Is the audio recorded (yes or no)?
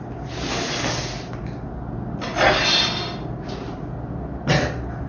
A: yes